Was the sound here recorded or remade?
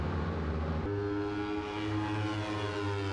recorded